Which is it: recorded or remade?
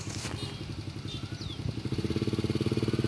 recorded